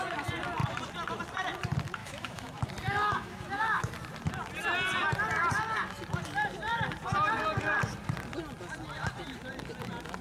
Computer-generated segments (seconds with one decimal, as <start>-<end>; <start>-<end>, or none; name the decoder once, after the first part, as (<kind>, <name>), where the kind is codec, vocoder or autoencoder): 2.0-2.6 (autoencoder, DAC-VAE); 3.0-3.9